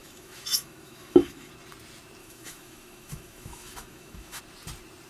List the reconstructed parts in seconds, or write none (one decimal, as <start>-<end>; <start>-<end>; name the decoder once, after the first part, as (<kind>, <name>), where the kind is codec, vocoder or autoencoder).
0.0-1.5 (autoencoder, DAC-VAE); 2.2-4.4